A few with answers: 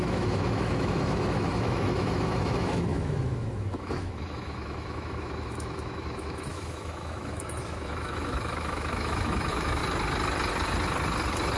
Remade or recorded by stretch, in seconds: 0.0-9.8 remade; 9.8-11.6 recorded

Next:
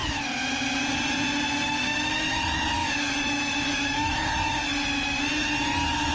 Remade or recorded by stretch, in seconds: 0.0-2.8 recorded; 2.8-4.2 remade; 4.2-6.1 recorded

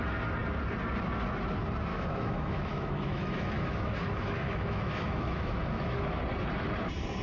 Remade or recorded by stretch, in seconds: 0.0-1.9 recorded; 1.9-6.2 remade; 6.2-7.2 recorded

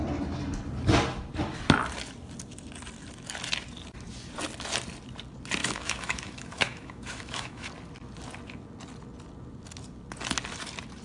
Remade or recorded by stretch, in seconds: 0.0-5.6 recorded; 5.6-7.7 remade; 7.7-11.0 recorded

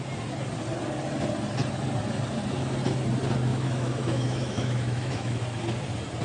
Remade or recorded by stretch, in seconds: 0.0-3.5 recorded; 3.5-5.4 remade; 5.4-6.2 recorded

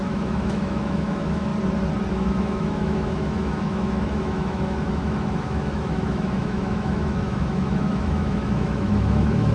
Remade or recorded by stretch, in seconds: 0.0-1.5 remade; 1.5-2.1 recorded; 2.1-9.5 remade

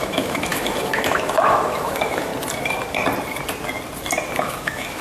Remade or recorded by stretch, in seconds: 0.0-2.3 remade; 2.3-4.4 recorded; 4.4-5.0 remade